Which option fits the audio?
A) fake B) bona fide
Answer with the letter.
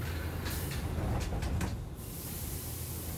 B